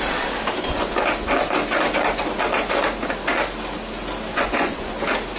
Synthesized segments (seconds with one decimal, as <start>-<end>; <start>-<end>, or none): 4.3-4.9